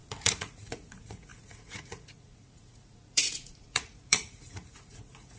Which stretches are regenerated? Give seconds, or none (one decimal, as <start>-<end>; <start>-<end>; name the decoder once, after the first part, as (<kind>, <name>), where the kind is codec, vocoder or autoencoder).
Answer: 0.0-5.4 (vocoder, Vocos)